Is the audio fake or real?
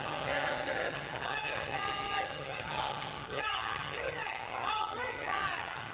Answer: fake